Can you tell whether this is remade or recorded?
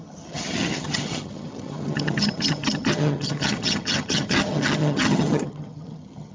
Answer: remade